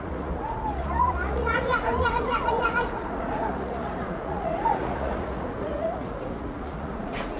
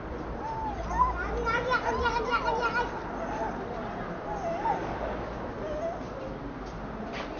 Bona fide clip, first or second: second